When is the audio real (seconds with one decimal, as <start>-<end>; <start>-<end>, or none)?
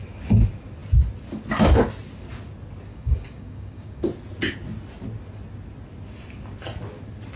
0.0-2.9; 4.0-7.4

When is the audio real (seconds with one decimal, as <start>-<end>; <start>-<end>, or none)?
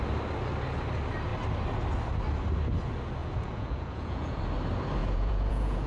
0.0-3.2; 4.4-5.0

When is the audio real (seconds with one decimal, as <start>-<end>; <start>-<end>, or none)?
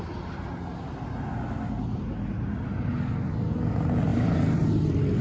0.0-2.3; 2.9-4.1; 4.7-5.2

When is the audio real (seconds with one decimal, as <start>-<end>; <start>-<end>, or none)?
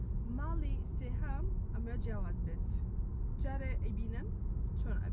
0.0-5.1